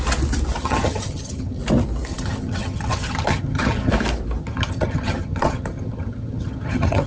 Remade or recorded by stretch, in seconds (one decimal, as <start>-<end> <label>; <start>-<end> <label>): 0.0-0.6 recorded; 0.6-1.6 remade; 1.6-2.1 recorded; 2.1-3.9 remade; 3.9-4.4 recorded; 4.4-7.1 remade